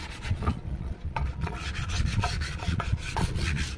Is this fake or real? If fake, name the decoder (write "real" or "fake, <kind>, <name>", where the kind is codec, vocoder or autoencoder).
fake, vocoder, Vocos